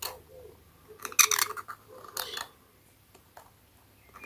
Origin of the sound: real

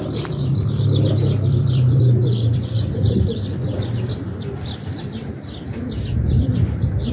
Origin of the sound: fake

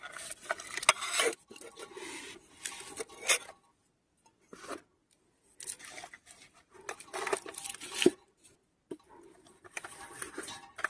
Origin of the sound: real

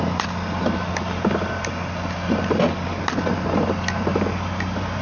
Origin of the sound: real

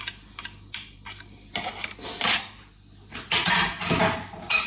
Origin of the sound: real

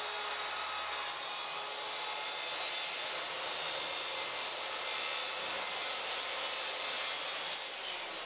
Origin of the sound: real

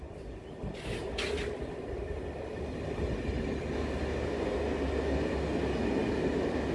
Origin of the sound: real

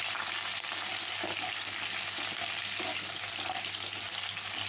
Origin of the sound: real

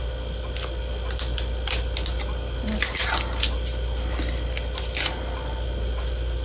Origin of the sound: real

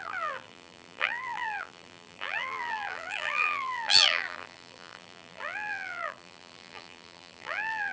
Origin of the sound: fake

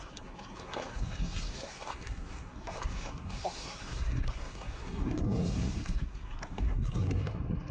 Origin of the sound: fake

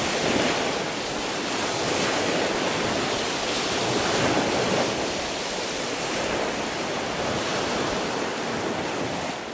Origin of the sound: real